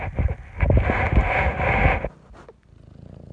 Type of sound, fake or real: real